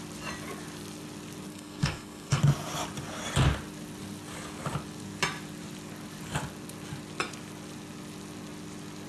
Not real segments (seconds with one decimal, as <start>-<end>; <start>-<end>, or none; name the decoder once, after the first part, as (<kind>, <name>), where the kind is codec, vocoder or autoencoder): 1.5-2.4 (codec, SNAC)